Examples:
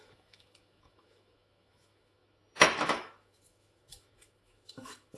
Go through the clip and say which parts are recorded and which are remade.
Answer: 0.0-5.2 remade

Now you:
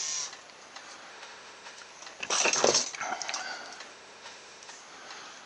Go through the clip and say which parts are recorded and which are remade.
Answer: 0.0-1.1 recorded; 1.1-1.9 remade; 1.9-3.9 recorded; 3.9-4.7 remade; 4.7-5.5 recorded

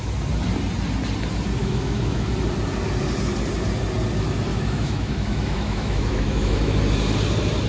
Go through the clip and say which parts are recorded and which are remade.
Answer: 0.0-1.6 recorded; 1.6-2.3 remade; 2.3-4.5 recorded; 4.5-6.8 remade; 6.8-7.7 recorded